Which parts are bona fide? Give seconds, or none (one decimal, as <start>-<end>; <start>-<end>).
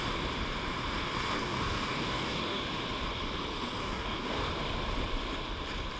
0.0-1.4; 2.6-3.8; 4.5-6.0